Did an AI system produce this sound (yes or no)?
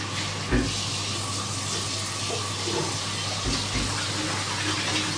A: no